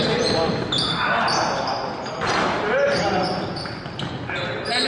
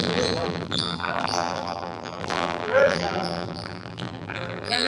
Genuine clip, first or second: first